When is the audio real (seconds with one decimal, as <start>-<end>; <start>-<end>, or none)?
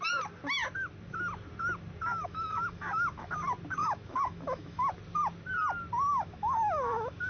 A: 0.0-2.1; 3.3-3.8; 4.9-6.1